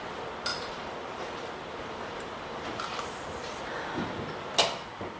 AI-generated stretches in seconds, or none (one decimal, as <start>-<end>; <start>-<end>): 0.5-3.6